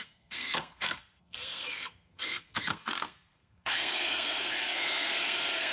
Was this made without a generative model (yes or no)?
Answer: no